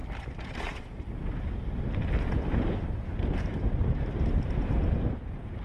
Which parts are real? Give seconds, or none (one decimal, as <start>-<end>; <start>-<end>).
1.1-2.5